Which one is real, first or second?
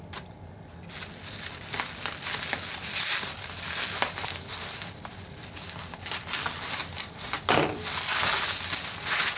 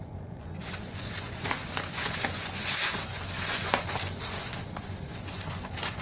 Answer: first